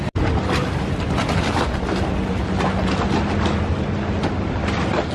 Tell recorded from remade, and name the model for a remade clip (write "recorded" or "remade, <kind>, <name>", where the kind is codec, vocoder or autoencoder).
recorded